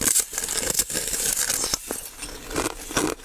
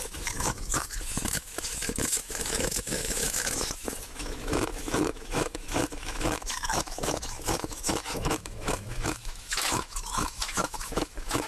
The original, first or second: first